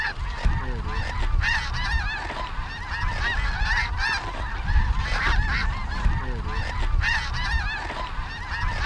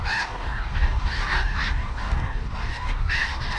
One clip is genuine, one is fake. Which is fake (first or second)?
second